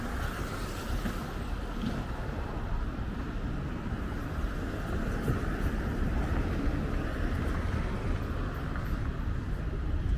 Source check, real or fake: real